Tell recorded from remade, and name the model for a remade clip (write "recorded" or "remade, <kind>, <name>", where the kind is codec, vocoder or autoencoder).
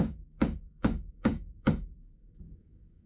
remade, codec, DAC